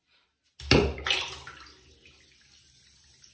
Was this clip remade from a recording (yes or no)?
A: no